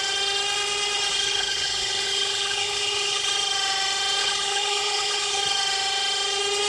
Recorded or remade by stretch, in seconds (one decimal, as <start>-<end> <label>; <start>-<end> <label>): 0.0-1.1 recorded; 1.1-3.3 remade; 3.3-4.2 recorded; 4.2-5.4 remade; 5.4-6.7 recorded